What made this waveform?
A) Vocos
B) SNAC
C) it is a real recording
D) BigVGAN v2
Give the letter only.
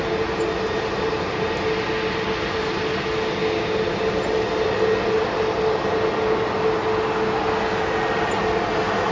C